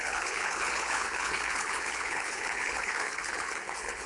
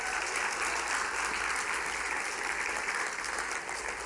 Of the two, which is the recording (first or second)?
second